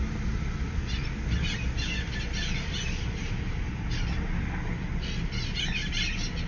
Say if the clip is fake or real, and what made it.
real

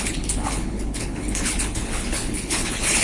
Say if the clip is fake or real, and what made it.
fake, codec, HILCodec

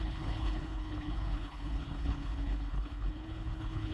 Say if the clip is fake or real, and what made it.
fake, codec, HILCodec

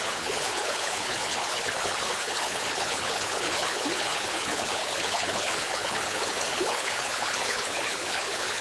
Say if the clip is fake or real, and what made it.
fake, codec, HILCodec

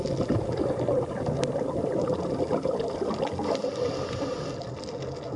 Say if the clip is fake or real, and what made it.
real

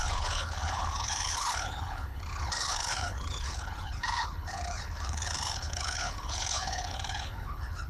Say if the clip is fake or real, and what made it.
fake, codec, HILCodec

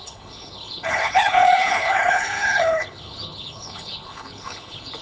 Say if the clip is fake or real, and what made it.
fake, codec, HILCodec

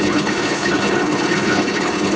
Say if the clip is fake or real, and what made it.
fake, codec, HILCodec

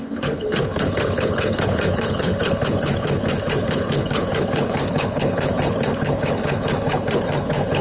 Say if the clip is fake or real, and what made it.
fake, codec, HILCodec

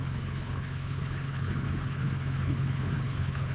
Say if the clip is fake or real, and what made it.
fake, codec, HILCodec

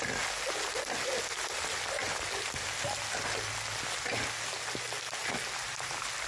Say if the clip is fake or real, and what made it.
real